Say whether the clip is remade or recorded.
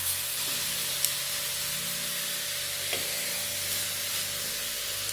recorded